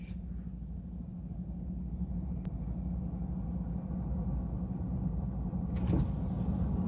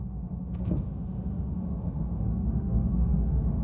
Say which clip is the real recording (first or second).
first